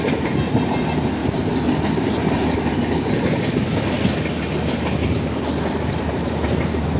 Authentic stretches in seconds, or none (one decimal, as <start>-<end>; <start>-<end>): 0.0-7.0